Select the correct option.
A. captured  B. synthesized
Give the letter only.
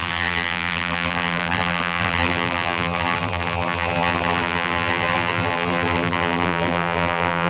B